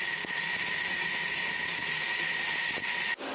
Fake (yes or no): no